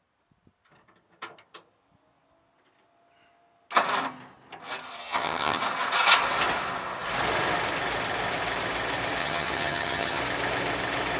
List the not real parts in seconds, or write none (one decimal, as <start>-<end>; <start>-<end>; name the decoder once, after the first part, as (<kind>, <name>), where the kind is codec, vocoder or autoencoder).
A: 5.0-5.6 (vocoder, HiFi-GAN); 9.2-10.2